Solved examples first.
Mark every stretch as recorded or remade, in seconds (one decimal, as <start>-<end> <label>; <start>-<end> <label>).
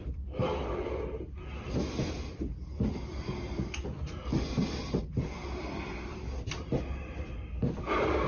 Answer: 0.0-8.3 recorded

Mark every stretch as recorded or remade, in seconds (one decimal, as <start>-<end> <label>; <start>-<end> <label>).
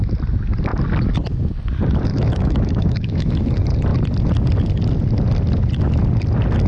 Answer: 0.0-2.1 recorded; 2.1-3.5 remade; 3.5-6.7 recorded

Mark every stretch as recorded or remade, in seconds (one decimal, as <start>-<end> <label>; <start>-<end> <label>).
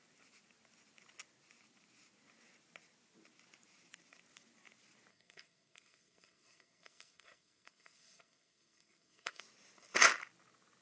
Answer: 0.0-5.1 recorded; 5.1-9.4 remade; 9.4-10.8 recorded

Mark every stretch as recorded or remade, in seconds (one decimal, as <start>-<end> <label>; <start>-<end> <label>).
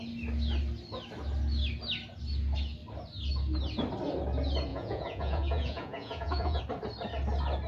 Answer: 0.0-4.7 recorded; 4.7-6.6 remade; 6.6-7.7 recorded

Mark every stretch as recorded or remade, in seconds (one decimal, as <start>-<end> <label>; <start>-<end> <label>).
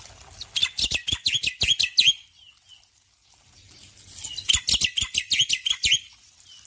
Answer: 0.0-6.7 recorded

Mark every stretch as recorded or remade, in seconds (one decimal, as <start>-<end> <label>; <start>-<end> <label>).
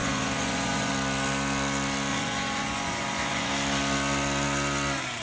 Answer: 0.0-0.9 remade; 0.9-2.1 recorded; 2.1-3.5 remade; 3.5-5.2 recorded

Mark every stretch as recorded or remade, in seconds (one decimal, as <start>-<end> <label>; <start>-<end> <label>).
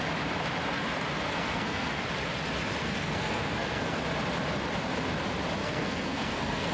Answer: 0.0-1.3 recorded; 1.3-2.0 remade; 2.0-2.8 recorded; 2.8-4.0 remade; 4.0-5.6 recorded; 5.6-6.7 remade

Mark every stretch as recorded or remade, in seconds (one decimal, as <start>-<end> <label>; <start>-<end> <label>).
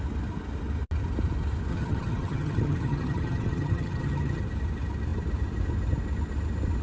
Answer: 0.0-1.7 recorded; 1.7-4.4 remade; 4.4-6.8 recorded